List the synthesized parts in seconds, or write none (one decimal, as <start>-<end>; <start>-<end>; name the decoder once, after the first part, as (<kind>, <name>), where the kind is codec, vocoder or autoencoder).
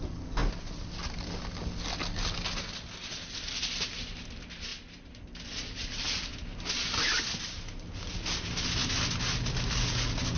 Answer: none